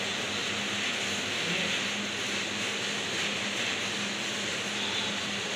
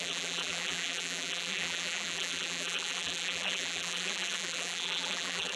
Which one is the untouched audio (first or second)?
first